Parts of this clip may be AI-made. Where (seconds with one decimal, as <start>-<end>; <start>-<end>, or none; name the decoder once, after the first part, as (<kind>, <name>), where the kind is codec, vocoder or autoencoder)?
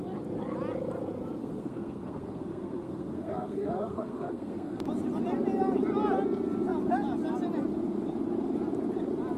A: 1.4-4.8 (codec, SNAC)